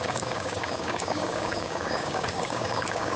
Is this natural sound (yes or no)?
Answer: no